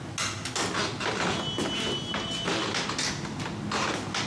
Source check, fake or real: real